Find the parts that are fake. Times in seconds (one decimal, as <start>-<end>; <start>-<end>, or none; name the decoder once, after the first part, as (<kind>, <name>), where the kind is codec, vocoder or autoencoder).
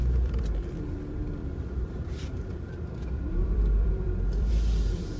0.0-0.8 (vocoder, BigVGAN v2); 1.4-4.5